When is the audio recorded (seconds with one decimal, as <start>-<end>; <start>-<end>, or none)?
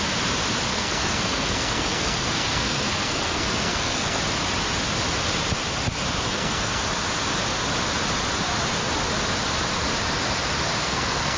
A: 0.0-0.7; 4.2-6.3; 6.8-10.8